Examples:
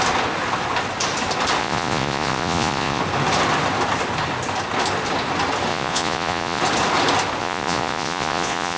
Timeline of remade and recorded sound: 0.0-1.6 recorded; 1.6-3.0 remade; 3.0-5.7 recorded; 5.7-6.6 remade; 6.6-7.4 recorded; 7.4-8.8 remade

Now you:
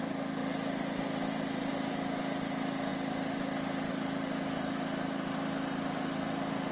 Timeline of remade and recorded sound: 0.0-6.7 recorded